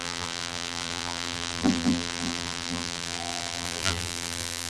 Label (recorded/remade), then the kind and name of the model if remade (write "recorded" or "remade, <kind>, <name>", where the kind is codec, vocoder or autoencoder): remade, vocoder, BigVGAN v2